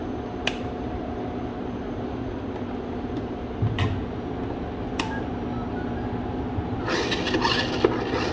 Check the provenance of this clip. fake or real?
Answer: real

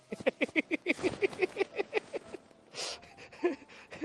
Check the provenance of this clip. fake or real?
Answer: fake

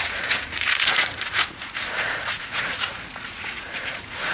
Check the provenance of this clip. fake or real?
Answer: fake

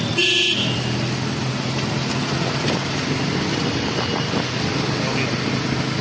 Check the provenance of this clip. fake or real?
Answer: real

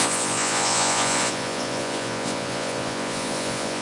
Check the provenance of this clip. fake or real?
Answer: fake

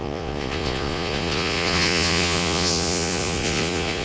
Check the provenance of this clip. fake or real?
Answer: fake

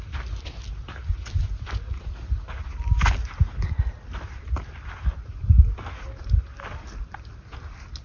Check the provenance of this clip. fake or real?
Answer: real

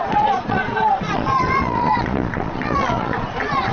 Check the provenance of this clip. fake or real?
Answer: fake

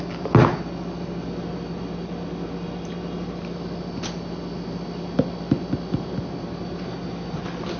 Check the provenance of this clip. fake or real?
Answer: real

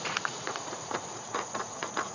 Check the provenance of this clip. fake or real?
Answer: fake